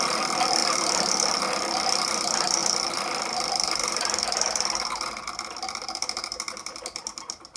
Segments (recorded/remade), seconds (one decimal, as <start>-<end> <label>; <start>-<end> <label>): 0.0-7.6 recorded